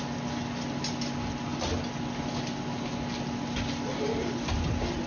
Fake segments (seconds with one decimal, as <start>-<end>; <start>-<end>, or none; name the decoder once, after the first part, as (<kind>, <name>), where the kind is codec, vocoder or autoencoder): none